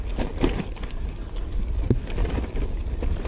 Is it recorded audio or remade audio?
recorded